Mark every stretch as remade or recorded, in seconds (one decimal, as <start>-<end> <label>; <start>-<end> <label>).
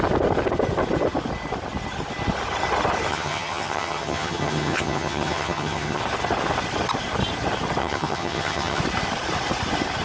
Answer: 0.0-3.1 recorded; 3.1-6.0 remade; 6.0-7.8 recorded; 7.8-8.8 remade; 8.8-10.0 recorded